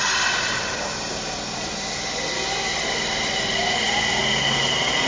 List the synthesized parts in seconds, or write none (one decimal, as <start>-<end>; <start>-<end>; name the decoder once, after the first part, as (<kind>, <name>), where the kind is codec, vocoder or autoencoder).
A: none